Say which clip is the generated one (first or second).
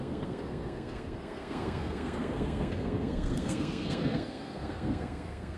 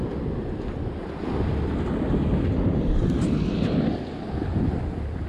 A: first